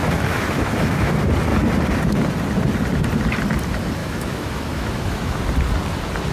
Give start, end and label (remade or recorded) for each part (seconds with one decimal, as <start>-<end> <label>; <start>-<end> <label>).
0.0-1.1 remade; 1.1-4.0 recorded; 4.0-5.4 remade; 5.4-6.3 recorded